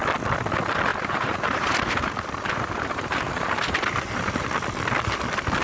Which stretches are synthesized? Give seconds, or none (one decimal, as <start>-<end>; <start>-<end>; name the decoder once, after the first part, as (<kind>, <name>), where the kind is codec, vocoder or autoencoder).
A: 0.9-4.3 (vocoder, BigVGAN v2)

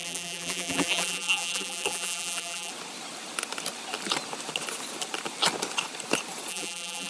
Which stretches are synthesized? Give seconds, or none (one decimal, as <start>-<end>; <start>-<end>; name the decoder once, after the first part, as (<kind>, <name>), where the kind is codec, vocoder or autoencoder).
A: 0.0-2.7 (vocoder, BigVGAN v2); 6.5-7.1

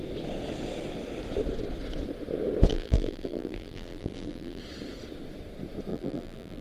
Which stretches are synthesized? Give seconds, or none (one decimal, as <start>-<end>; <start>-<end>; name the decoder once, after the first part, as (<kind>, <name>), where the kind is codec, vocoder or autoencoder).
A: 2.7-4.6 (vocoder, BigVGAN v2); 5.9-6.6

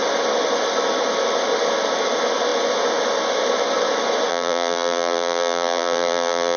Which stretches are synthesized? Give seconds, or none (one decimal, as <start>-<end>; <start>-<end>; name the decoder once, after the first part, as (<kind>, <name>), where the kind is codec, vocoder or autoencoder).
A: 4.3-6.6 (vocoder, BigVGAN v2)

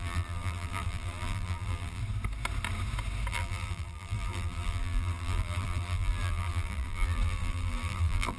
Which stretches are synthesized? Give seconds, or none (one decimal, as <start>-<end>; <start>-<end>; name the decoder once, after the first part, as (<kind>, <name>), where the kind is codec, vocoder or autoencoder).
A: 0.0-2.0 (vocoder, BigVGAN v2); 3.3-8.4